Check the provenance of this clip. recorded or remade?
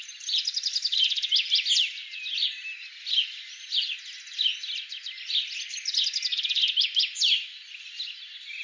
recorded